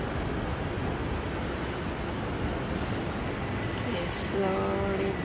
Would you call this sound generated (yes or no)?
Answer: no